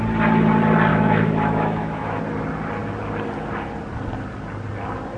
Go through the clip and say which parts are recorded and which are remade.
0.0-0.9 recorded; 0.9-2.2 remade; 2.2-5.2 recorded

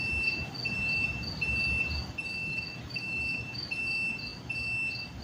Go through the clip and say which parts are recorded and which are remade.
0.0-2.3 recorded; 2.3-3.7 remade; 3.7-5.2 recorded

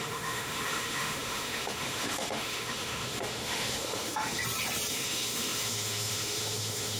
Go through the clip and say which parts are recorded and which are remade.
0.0-4.4 remade; 4.4-4.9 recorded; 4.9-7.0 remade

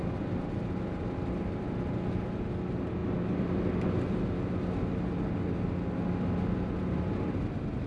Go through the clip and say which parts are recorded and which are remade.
0.0-7.9 recorded

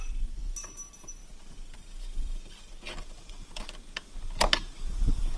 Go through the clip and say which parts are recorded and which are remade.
0.0-5.4 recorded

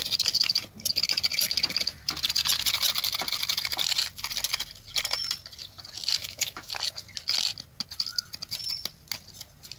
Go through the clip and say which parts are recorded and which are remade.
0.0-6.2 recorded; 6.2-6.7 remade; 6.7-9.8 recorded

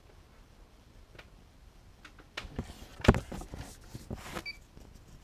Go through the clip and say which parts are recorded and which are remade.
0.0-5.2 recorded

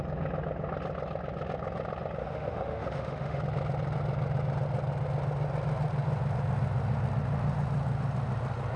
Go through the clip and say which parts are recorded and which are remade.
0.0-2.2 recorded; 2.2-3.4 remade; 3.4-8.8 recorded